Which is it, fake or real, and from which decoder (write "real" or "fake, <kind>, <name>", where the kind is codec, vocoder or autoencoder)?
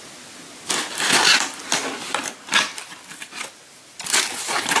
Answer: real